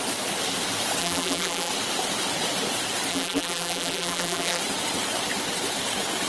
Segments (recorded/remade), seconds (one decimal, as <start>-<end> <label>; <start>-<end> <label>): 0.0-1.0 recorded; 1.0-1.7 remade; 1.7-3.1 recorded; 3.1-4.6 remade; 4.6-6.3 recorded